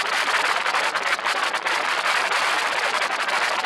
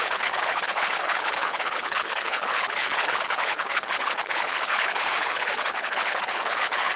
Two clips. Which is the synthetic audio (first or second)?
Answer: second